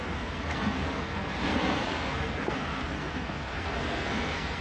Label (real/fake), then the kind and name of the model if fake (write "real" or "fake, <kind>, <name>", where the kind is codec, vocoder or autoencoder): fake, codec, SNAC